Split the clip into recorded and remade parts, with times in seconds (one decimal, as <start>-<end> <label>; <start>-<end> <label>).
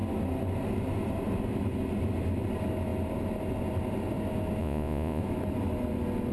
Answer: 0.0-4.6 recorded; 4.6-5.2 remade; 5.2-6.3 recorded